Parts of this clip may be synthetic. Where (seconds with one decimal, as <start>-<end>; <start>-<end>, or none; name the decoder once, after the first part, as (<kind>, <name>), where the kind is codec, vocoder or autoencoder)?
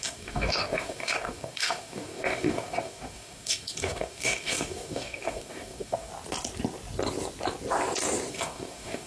0.0-6.1 (codec, DAC); 8.3-9.1